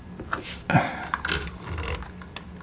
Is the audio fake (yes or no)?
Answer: no